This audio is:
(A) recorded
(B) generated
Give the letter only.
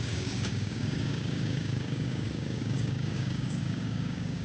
B